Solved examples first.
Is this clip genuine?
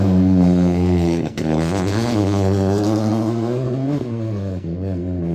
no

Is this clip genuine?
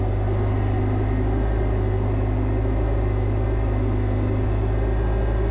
yes